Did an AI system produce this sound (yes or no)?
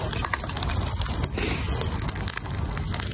no